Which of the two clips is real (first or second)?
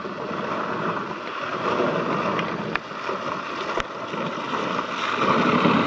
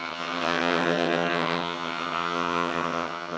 first